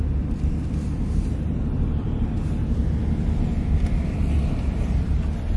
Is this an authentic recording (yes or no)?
yes